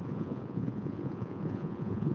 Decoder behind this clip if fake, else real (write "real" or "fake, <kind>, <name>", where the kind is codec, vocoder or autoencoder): fake, vocoder, Vocos